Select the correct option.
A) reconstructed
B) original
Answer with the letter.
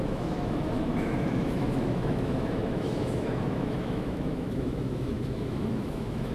A